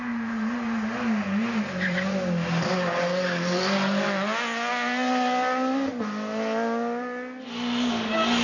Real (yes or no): yes